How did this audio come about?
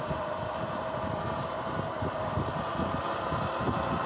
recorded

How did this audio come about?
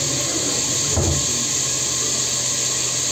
recorded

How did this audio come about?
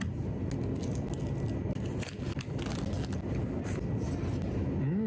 recorded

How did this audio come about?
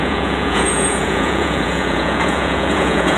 remade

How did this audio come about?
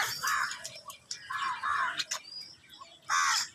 recorded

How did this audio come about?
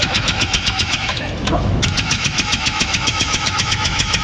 remade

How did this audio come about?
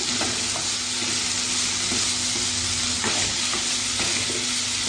recorded